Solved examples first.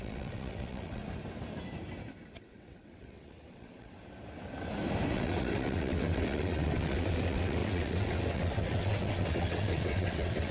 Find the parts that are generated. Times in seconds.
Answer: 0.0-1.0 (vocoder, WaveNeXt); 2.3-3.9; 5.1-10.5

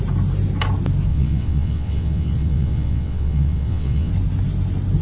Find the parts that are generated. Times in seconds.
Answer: 1.1-4.1 (vocoder, WaveNeXt)

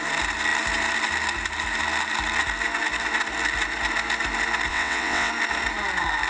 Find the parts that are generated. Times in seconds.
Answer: 4.7-5.3 (vocoder, WaveNeXt)

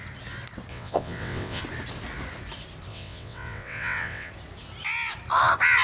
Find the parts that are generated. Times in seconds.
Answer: 0.7-1.6 (vocoder, WaveNeXt); 2.9-4.3

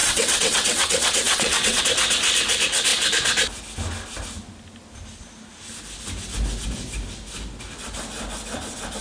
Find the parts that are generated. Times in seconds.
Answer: 0.0-1.8 (vocoder, WaveNeXt)

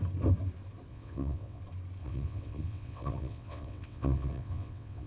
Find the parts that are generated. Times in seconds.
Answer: 0.9-1.6 (vocoder, WaveNeXt); 2.0-5.1

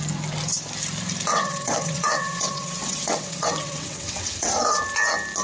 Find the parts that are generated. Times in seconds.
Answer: 1.3-4.5 (vocoder, WaveNeXt)

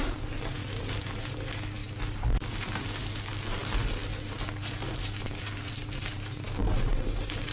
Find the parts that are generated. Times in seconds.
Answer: none